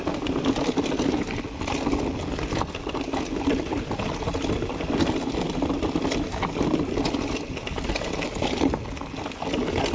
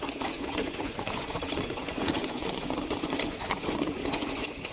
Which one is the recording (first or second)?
first